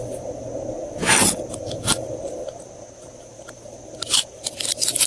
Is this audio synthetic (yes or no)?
no